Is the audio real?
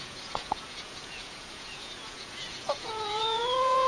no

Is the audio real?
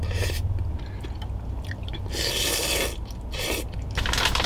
yes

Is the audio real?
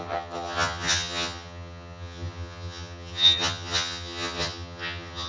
no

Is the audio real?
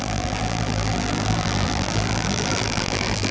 no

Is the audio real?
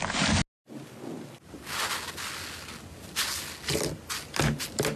yes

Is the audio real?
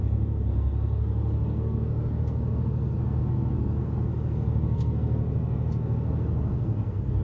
no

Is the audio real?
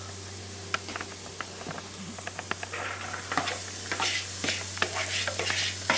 yes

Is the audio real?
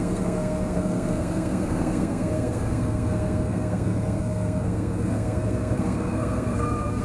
no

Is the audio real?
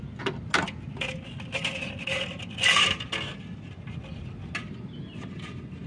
yes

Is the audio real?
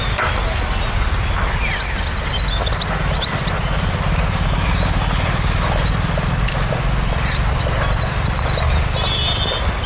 yes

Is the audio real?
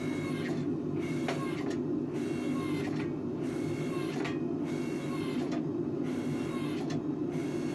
yes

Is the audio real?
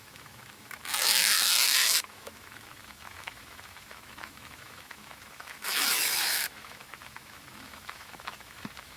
no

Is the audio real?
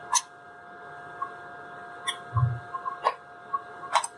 yes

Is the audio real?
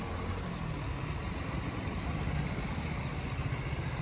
yes